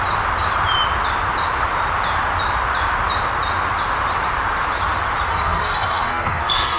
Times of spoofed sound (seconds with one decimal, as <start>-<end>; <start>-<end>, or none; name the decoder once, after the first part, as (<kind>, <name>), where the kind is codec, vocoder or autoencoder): 5.3-6.8 (codec, SNAC)